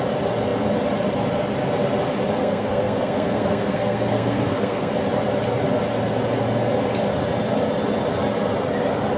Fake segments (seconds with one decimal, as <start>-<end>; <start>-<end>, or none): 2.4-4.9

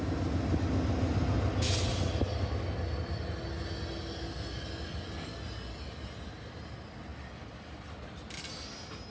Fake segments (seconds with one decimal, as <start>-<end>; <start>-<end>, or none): none

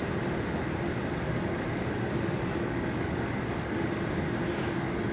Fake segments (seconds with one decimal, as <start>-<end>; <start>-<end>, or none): 1.0-4.0